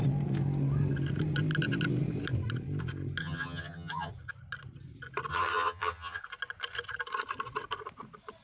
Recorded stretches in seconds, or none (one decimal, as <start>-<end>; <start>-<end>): 0.0-3.2; 4.1-5.3; 6.2-8.4